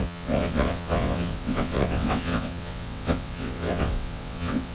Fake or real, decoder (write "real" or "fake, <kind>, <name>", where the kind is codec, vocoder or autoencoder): fake, vocoder, WaveNeXt